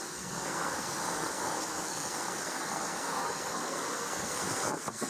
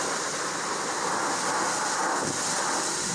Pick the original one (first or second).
second